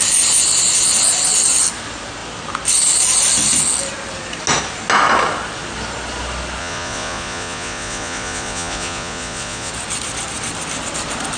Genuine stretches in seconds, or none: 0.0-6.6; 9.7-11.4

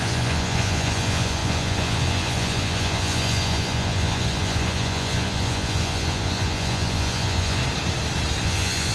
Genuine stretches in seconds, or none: 7.6-8.4

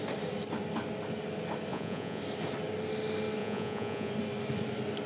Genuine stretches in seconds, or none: 0.0-1.7; 2.2-3.4; 4.1-5.1

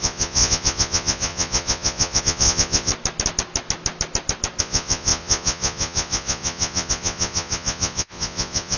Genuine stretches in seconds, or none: 2.9-4.6

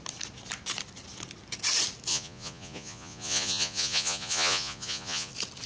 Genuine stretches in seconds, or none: 0.0-2.1; 5.3-5.7

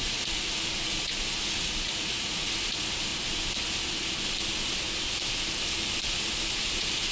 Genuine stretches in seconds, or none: 3.1-6.3